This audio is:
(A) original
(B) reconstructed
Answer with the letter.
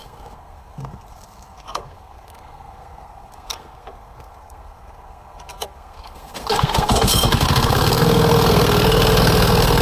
B